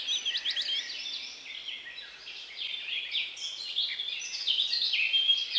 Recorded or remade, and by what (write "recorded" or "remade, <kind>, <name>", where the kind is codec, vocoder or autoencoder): recorded